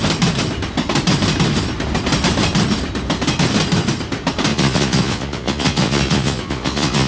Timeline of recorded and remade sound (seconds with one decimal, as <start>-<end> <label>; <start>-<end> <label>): 0.0-4.5 recorded; 4.5-7.1 remade